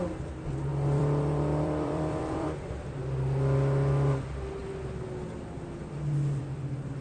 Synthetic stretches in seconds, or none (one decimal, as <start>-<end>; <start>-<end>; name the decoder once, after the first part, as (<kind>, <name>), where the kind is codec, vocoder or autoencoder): 0.7-2.8 (vocoder, BigVGAN v2)